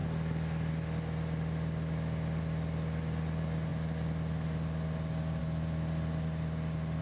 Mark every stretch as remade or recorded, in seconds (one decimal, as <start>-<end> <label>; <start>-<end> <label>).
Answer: 0.0-7.0 recorded